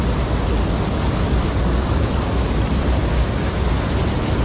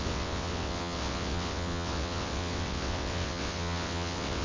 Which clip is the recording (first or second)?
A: first